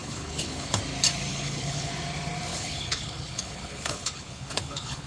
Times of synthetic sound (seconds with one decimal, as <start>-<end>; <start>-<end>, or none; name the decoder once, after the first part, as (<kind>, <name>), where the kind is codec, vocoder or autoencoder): 0.0-0.8 (codec, HILCodec); 1.3-1.9; 2.5-5.1